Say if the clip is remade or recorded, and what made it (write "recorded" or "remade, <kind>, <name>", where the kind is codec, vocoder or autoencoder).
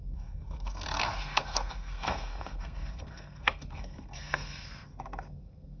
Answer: remade, codec, SNAC